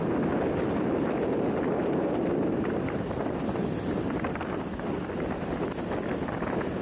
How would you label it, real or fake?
real